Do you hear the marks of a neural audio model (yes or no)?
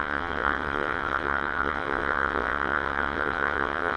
yes